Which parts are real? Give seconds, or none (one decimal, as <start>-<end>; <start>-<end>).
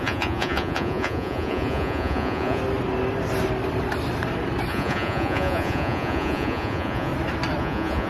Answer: 2.6-4.7; 7.1-7.6